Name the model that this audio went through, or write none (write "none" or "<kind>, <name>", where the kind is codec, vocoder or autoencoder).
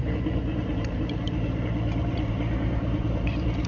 vocoder, BigVGAN v2